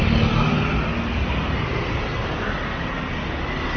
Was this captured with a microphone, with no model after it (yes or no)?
yes